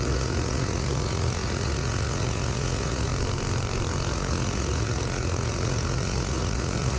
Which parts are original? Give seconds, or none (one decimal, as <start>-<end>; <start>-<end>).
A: 3.1-4.1